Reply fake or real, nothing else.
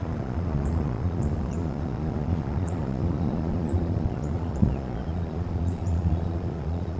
fake